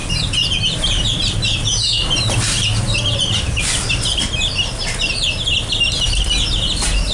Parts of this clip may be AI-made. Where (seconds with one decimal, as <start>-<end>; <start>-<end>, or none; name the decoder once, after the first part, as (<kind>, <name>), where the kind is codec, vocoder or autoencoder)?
0.0-3.6 (vocoder, BigVGAN v2)